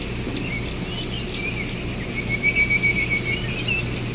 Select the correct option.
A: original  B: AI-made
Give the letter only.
A